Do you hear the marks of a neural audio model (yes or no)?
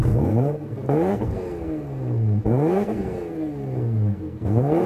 yes